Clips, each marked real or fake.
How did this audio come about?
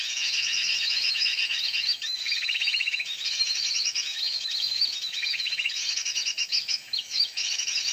fake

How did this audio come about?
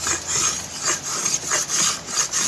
real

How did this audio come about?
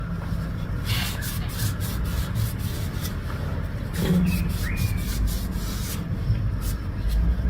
real